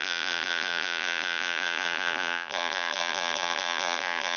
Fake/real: fake